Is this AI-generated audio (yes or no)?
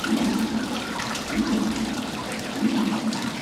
yes